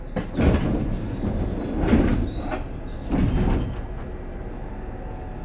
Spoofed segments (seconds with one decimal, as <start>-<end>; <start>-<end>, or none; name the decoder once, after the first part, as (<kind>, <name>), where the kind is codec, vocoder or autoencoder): none